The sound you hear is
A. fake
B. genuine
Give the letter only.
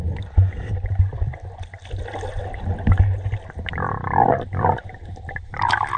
B